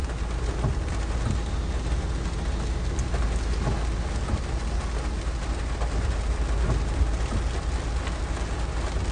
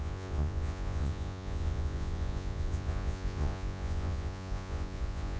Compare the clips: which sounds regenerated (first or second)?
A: second